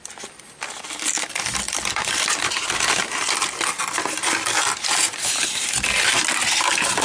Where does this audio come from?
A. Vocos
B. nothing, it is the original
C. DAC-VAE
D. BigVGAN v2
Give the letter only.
B